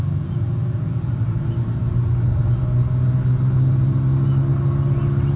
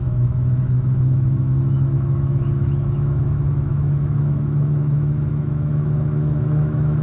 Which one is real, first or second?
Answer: first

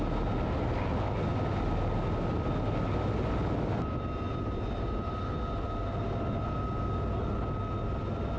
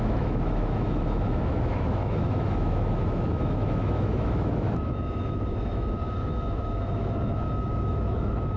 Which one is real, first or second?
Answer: first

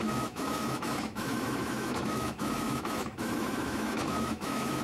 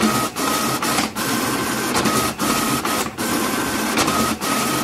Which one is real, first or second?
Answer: second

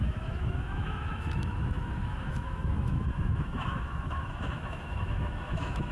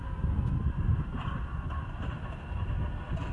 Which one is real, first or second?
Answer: second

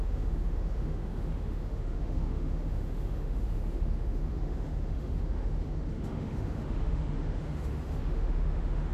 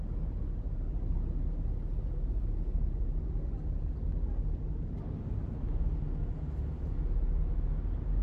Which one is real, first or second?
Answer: second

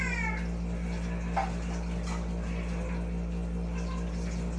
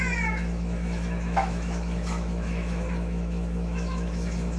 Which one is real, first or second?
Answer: first